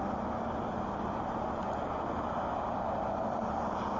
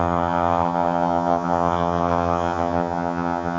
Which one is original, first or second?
first